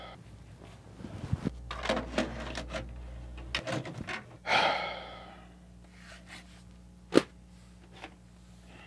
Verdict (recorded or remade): recorded